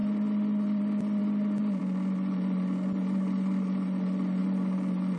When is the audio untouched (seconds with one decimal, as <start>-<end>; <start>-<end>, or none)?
0.0-5.2